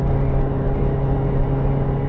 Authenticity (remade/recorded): recorded